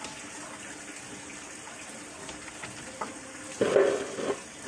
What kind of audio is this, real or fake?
real